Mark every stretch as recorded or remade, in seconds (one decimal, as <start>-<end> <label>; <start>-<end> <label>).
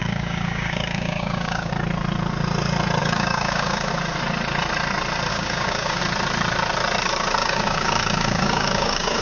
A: 0.0-1.7 remade; 1.7-3.0 recorded; 3.0-3.9 remade; 3.9-5.3 recorded; 5.3-6.0 remade; 6.0-7.4 recorded; 7.4-9.2 remade